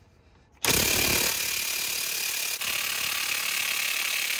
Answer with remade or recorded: recorded